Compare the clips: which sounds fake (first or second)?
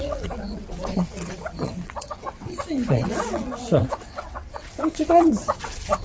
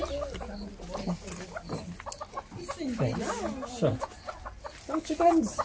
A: first